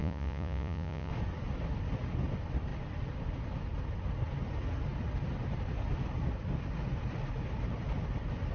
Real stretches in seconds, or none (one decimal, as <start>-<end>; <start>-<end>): 1.1-8.5